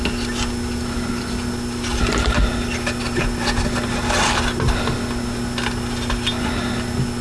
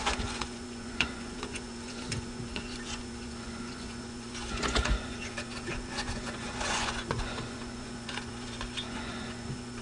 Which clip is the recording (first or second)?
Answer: first